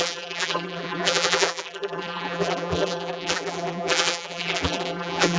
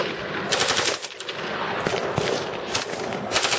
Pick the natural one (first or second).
second